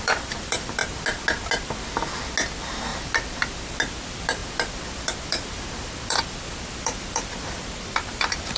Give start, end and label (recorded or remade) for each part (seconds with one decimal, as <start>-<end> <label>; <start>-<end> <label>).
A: 0.0-0.8 remade; 0.8-2.5 recorded; 2.5-2.9 remade; 2.9-3.9 recorded; 3.9-8.6 remade